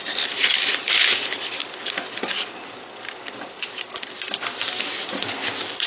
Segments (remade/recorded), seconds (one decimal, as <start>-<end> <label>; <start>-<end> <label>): 0.0-1.6 recorded; 1.6-4.5 remade; 4.5-5.9 recorded